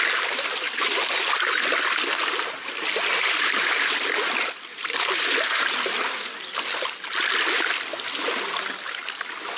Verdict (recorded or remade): recorded